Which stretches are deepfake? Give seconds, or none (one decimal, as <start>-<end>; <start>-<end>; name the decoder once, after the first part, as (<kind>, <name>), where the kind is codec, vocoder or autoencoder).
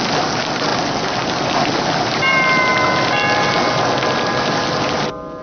none